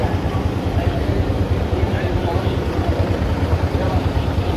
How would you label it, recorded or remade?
remade